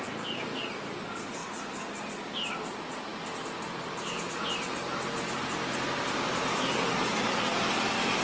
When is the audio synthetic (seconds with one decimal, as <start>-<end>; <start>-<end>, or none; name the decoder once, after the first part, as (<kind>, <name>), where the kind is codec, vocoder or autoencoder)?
none